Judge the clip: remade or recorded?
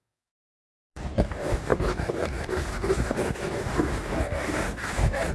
remade